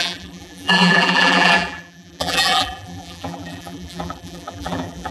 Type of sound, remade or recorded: remade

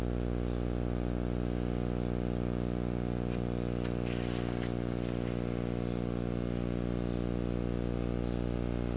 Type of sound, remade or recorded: recorded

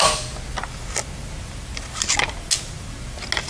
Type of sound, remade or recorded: recorded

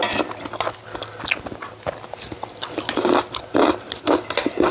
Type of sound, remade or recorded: recorded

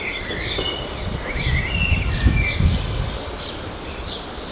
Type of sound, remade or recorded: recorded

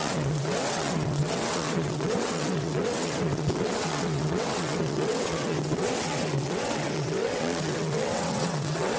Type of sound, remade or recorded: remade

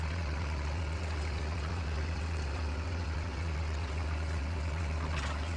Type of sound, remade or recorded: remade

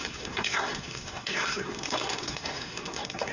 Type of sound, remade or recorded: remade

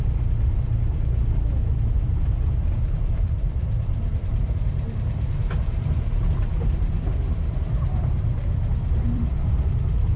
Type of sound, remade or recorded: remade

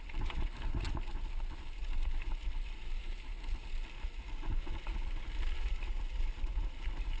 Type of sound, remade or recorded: recorded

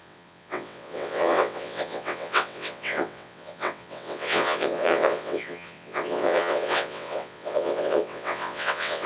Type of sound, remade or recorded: remade